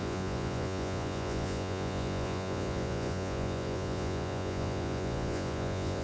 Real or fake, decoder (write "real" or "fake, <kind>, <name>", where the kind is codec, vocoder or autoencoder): fake, vocoder, Vocos